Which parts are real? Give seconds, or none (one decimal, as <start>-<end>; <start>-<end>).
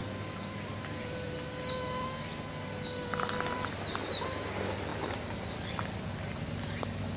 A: 0.0-7.2